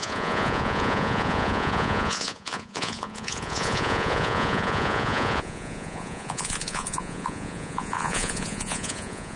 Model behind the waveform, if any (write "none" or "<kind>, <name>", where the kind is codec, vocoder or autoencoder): vocoder, Vocos